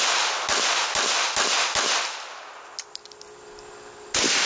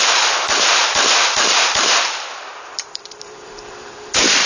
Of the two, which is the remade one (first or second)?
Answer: second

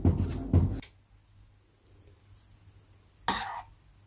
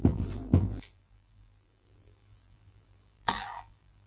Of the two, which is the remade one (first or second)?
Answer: second